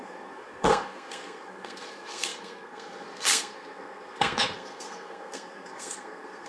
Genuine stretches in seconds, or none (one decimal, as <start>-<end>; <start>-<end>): none

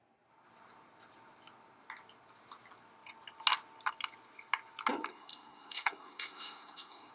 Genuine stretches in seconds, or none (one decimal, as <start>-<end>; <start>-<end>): 0.0-5.1

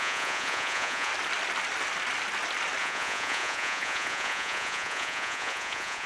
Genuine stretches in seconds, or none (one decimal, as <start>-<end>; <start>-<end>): 1.1-2.8